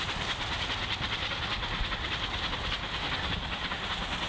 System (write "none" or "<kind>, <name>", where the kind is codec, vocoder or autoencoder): none